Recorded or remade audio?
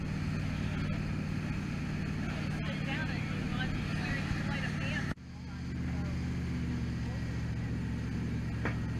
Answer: recorded